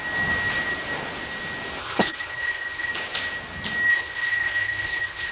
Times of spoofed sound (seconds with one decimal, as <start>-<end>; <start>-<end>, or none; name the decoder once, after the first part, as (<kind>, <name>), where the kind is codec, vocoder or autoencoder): 1.8-2.9 (codec, HILCodec); 3.9-5.3